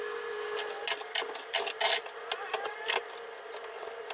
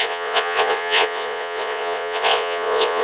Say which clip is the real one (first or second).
first